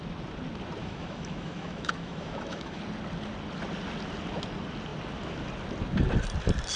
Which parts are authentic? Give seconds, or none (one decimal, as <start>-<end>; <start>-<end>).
0.0-0.8; 2.8-6.8